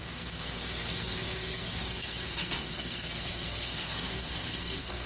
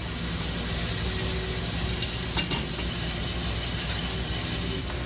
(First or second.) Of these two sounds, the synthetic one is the first